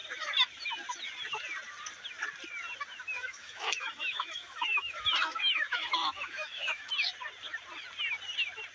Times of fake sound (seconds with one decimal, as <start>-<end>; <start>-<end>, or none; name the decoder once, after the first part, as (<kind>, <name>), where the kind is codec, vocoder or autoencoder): 3.2-6.9 (autoencoder, DAC-VAE)